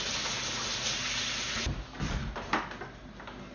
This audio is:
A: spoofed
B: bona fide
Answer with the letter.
B